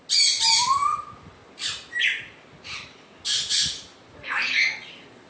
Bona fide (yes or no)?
yes